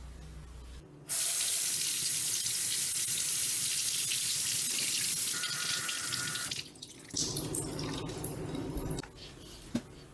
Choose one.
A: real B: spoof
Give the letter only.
A